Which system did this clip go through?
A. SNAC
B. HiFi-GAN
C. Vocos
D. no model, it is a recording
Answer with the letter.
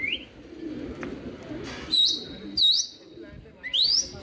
D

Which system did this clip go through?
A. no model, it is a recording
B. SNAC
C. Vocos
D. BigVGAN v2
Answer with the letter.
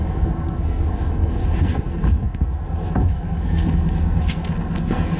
B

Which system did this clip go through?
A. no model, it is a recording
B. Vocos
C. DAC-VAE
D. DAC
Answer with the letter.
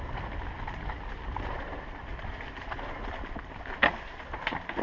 A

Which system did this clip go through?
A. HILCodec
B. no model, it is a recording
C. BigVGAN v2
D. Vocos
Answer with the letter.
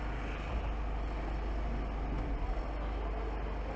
B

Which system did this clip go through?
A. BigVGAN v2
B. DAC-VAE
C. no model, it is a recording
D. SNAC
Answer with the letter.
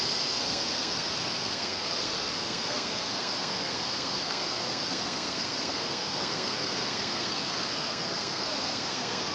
D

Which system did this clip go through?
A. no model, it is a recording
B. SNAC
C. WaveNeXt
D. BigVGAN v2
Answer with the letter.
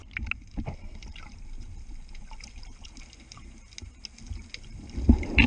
A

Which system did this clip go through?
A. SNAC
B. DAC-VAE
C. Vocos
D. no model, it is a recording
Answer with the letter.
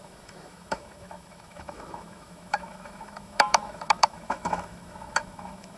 B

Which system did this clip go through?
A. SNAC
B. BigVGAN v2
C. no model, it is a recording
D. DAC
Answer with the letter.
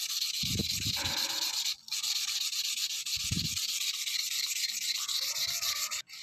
B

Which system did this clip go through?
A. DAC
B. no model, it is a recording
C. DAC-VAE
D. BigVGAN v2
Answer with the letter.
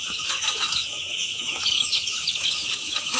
C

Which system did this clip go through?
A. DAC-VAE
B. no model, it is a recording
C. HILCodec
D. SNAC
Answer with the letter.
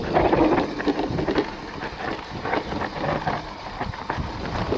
B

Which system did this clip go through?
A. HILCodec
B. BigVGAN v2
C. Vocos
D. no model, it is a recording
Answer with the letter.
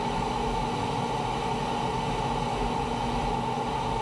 D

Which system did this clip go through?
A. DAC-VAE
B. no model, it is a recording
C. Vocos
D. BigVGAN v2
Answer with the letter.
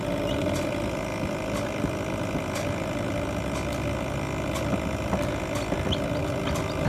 B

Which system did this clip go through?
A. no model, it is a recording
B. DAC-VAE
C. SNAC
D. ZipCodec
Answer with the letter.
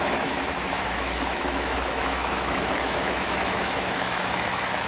B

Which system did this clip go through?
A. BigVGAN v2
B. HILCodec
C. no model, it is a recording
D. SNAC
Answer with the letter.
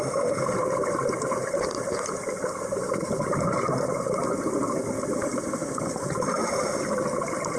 C